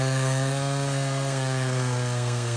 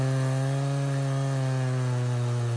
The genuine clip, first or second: second